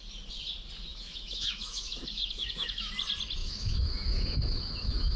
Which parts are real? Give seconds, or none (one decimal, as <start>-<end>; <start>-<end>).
0.0-0.9; 2.9-3.4

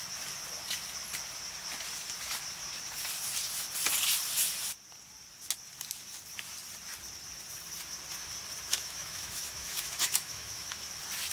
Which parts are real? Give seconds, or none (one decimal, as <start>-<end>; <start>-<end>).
0.0-8.7; 10.9-11.3

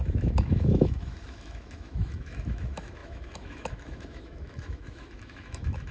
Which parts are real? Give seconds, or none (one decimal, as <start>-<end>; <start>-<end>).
none

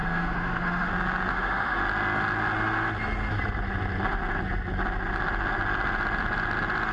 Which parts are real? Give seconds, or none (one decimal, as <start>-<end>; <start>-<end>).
0.9-1.3; 1.8-6.9

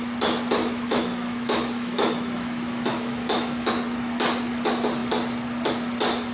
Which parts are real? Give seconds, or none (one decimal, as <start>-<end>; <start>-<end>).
0.0-0.6; 3.7-6.3

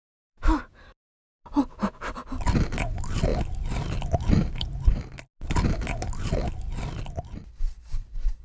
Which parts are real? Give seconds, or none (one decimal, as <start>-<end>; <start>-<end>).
0.6-8.4

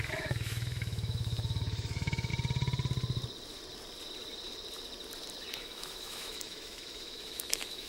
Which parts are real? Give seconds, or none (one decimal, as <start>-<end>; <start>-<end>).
2.3-5.6